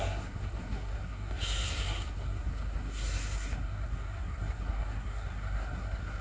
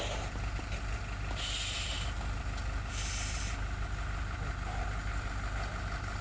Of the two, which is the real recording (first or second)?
second